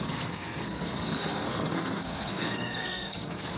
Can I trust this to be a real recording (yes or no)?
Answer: no